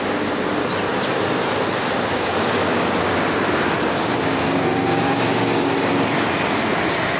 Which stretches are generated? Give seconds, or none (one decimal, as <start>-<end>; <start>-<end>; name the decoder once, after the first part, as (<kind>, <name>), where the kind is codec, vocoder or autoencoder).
2.3-6.2 (codec, DAC)

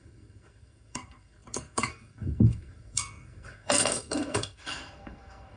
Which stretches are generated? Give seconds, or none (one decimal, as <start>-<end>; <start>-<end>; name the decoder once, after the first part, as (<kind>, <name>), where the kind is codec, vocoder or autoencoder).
0.0-5.6 (codec, SNAC)

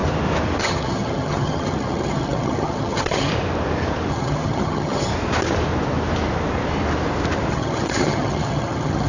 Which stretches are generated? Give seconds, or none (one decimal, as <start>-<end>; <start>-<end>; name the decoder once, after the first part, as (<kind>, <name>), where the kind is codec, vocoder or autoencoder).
0.6-3.3 (vocoder, HiFi-GAN); 4.1-5.1; 7.5-9.1

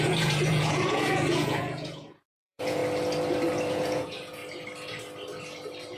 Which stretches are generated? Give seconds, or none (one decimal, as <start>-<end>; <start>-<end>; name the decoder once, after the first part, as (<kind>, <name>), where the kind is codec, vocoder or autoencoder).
0.0-2.8 (vocoder, Vocos); 3.7-4.4

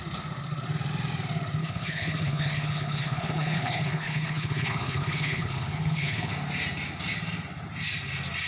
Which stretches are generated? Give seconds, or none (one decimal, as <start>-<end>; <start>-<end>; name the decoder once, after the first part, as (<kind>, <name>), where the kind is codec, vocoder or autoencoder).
1.6-6.3 (codec, HILCodec)